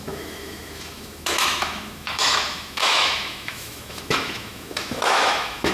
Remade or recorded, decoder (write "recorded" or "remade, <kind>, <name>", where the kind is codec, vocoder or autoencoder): remade, autoencoder, DAC-VAE